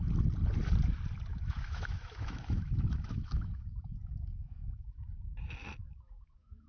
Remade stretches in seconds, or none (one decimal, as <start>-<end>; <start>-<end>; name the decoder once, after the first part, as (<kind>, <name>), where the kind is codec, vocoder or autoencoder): 1.3-5.3 (autoencoder, DAC-VAE); 5.8-6.7